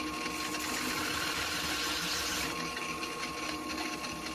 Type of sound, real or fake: real